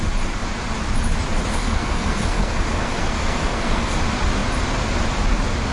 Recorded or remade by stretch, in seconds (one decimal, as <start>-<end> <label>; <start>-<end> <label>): 0.0-1.5 recorded; 1.5-4.0 remade; 4.0-5.7 recorded